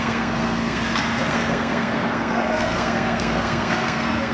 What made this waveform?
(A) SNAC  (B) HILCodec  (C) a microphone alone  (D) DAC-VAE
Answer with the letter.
A